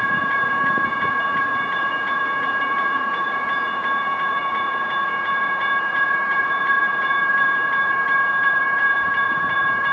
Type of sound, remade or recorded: remade